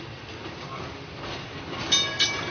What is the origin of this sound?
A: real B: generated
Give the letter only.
A